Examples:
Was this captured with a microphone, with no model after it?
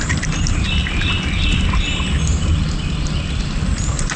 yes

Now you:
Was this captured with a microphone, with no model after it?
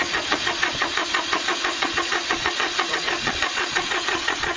no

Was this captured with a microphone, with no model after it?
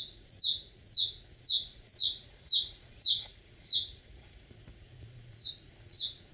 no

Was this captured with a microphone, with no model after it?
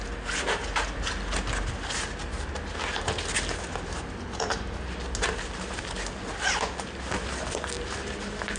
yes